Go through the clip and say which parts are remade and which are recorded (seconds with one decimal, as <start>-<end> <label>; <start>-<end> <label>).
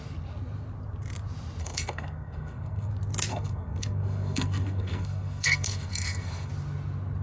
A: 0.0-1.6 recorded; 1.6-2.9 remade; 2.9-3.3 recorded; 3.3-6.5 remade; 6.5-7.2 recorded